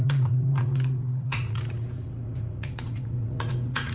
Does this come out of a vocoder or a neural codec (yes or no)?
yes